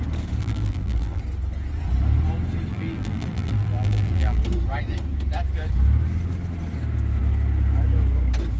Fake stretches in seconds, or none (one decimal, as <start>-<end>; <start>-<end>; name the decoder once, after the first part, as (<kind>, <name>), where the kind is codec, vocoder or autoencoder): 0.4-1.2 (vocoder, BigVGAN v2); 2.7-4.4